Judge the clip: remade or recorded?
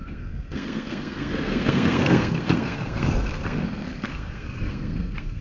remade